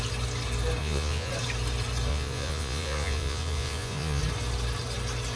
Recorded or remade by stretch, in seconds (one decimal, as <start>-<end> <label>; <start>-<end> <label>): 0.0-0.8 recorded; 0.8-1.3 remade; 1.3-2.1 recorded; 2.1-4.2 remade; 4.2-5.4 recorded